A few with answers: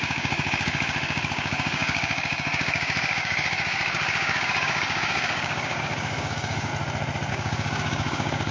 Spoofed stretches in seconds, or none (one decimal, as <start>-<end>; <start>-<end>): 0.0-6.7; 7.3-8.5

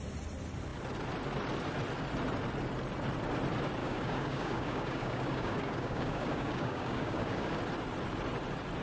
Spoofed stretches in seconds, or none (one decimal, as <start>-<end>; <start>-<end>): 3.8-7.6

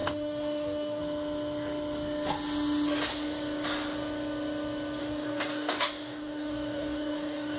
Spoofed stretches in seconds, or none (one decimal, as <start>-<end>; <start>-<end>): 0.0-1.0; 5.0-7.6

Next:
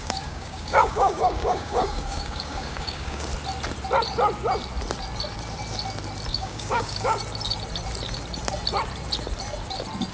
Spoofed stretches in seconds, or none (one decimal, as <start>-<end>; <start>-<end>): 0.0-3.3; 6.3-7.2